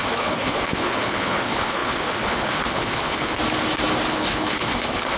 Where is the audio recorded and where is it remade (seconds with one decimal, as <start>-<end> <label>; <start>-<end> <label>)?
0.0-3.4 remade; 3.4-4.1 recorded; 4.1-5.2 remade